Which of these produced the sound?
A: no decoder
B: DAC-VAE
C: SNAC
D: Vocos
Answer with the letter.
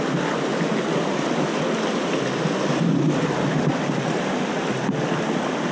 A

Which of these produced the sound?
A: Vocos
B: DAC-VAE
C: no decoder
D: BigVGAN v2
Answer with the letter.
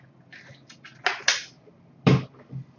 C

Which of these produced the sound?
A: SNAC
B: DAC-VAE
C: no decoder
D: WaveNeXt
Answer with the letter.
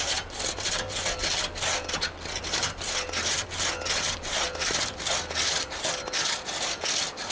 C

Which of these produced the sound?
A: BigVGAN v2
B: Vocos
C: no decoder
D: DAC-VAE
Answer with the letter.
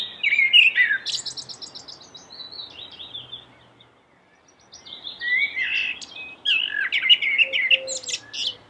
C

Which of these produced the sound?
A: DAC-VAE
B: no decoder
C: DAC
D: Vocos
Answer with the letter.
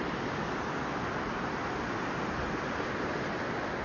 B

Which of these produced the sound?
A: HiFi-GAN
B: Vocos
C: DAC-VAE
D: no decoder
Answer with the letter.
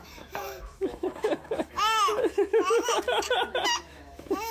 C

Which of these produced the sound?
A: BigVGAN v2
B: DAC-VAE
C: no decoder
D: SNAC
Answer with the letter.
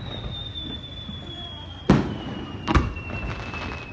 C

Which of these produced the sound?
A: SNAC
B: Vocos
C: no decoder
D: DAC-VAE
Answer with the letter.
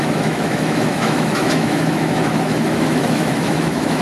D